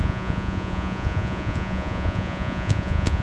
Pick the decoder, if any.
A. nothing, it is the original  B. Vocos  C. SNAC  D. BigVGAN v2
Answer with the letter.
B